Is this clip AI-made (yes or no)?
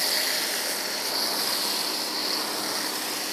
no